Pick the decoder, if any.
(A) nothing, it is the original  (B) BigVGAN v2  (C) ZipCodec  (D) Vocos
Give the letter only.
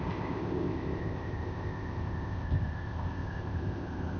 C